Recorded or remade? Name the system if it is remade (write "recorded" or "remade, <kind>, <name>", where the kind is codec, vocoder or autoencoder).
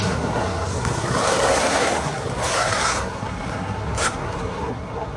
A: remade, codec, SNAC